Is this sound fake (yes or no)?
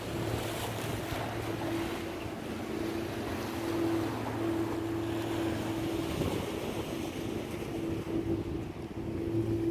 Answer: no